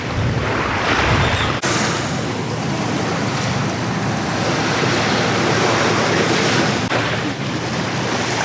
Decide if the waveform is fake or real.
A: real